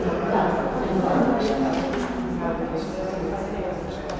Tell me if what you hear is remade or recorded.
recorded